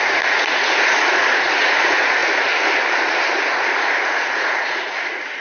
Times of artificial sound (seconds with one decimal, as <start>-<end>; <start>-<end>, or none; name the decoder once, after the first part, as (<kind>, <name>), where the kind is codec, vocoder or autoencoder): 0.0-2.2 (vocoder, Vocos); 3.4-5.4